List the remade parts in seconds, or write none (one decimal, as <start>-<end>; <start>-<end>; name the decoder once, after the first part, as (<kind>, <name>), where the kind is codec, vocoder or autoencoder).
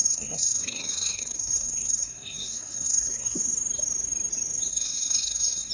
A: 0.0-3.4 (codec, SNAC); 4.7-5.7